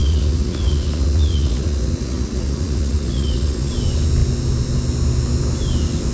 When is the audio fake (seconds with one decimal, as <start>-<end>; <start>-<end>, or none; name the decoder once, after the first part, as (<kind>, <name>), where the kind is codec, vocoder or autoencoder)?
0.0-3.7 (vocoder, Vocos)